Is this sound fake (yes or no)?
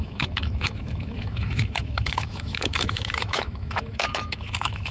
yes